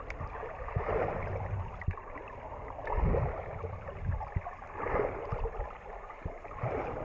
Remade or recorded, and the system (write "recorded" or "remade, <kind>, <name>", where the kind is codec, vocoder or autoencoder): recorded